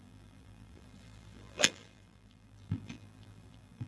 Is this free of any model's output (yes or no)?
no